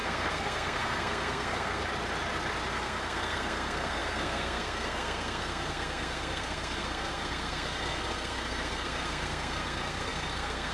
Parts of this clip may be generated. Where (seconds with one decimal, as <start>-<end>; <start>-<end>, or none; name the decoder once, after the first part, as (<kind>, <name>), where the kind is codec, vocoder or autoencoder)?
0.0-1.8 (codec, SNAC); 2.7-10.7